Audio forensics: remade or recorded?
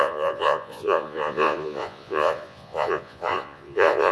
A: remade